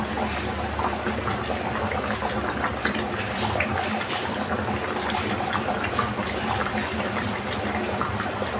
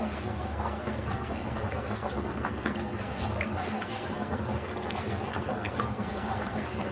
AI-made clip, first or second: second